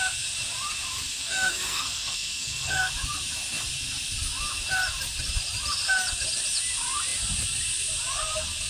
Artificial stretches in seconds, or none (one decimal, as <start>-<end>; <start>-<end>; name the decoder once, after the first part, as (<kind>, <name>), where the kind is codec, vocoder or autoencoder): 1.2-2.9 (codec, SNAC)